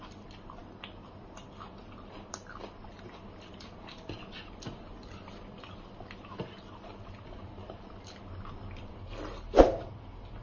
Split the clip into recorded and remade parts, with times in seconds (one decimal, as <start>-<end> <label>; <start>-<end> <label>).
0.0-10.4 recorded